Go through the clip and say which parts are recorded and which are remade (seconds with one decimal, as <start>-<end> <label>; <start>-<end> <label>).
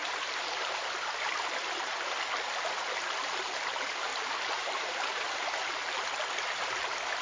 0.0-0.6 remade; 0.6-4.1 recorded; 4.1-5.9 remade; 5.9-7.2 recorded